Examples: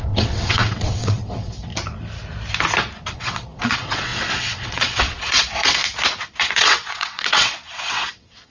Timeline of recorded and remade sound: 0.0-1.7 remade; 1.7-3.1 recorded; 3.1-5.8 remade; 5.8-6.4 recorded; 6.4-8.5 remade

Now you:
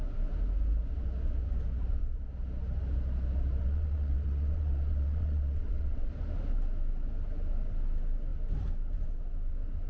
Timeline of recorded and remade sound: 0.0-3.6 recorded; 3.6-6.1 remade; 6.1-9.9 recorded

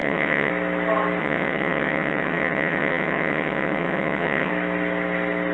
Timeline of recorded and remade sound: 0.0-0.5 remade; 0.5-1.2 recorded; 1.2-4.5 remade; 4.5-5.5 recorded

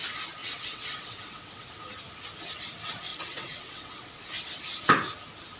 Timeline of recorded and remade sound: 0.0-0.4 recorded; 0.4-1.7 remade; 1.7-3.1 recorded; 3.1-4.2 remade; 4.2-5.6 recorded

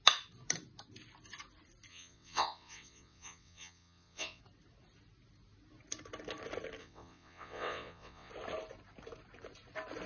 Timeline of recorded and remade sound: 0.0-1.9 recorded; 1.9-4.4 remade; 4.4-6.8 recorded; 6.8-8.3 remade; 8.3-10.1 recorded

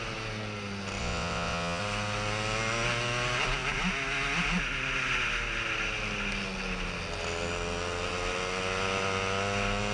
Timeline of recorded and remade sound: 0.0-1.0 recorded; 1.0-1.8 remade; 1.8-9.9 recorded

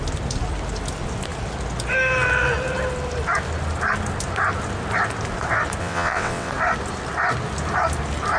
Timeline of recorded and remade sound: 0.0-5.8 recorded; 5.8-6.5 remade; 6.5-8.4 recorded